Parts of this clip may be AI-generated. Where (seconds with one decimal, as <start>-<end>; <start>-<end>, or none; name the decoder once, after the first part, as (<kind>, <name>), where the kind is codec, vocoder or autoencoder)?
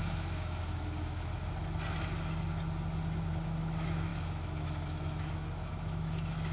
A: 0.0-1.3 (autoencoder, DAC-VAE); 3.2-6.5